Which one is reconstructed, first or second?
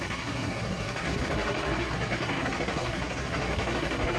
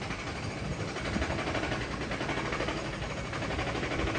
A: first